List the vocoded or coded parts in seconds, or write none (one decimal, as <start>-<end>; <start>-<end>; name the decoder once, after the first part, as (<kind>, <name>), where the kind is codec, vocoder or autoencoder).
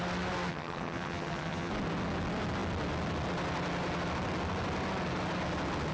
0.5-1.7 (vocoder, HiFi-GAN)